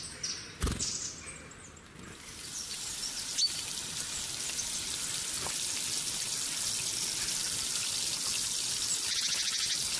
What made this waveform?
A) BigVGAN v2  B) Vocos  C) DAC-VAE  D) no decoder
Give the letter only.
D